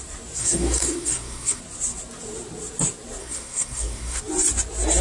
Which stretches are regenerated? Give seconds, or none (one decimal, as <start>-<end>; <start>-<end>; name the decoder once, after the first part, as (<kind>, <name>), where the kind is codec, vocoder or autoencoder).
0.4-1.6 (codec, SNAC); 3.2-4.2